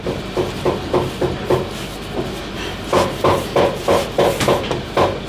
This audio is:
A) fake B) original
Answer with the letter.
B